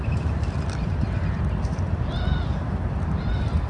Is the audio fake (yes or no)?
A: no